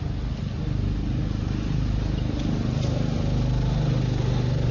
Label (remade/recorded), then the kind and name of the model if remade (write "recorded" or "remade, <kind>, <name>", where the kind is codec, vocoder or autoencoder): recorded